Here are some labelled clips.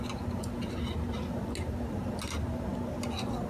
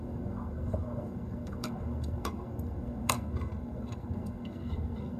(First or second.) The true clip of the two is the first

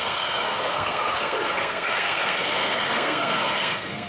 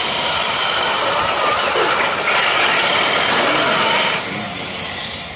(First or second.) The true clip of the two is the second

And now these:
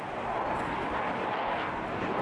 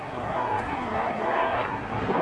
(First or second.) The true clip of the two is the first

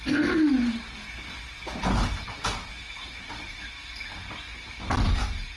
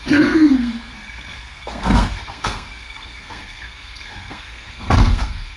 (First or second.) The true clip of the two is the first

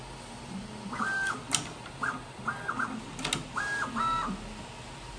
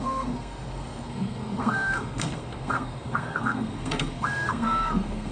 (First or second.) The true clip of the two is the first